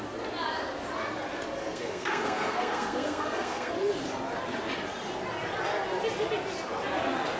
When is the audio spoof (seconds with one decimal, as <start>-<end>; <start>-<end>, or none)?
1.6-3.9